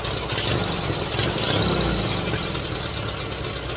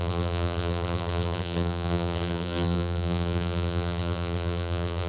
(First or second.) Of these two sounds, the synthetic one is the second